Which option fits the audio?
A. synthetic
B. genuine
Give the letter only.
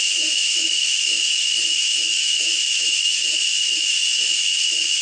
A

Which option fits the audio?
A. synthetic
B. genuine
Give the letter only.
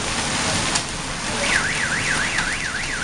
B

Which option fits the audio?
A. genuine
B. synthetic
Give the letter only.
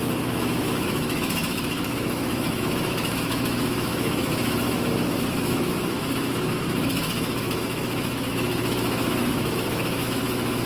B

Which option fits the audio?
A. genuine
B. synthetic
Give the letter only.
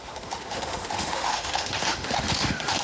B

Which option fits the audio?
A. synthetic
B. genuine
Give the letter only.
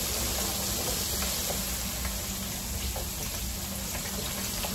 B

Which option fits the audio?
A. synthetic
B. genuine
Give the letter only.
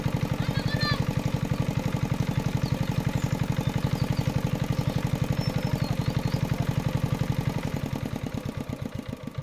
B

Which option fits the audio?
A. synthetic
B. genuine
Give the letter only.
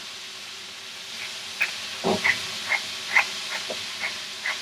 B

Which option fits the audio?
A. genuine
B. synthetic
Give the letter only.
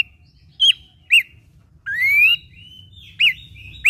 A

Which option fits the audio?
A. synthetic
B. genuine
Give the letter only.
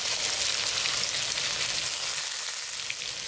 B